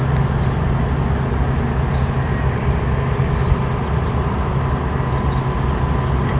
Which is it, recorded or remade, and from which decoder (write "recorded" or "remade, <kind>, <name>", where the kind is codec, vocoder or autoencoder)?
recorded